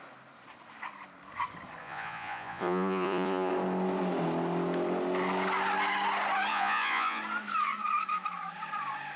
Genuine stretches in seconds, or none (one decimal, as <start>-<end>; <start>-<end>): 0.0-1.8; 3.5-6.5; 7.2-9.2